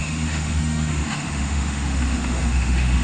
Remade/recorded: remade